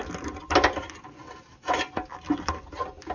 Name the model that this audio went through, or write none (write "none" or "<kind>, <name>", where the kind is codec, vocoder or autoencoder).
none